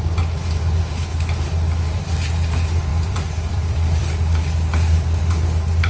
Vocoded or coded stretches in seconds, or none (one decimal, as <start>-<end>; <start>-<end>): 2.9-4.0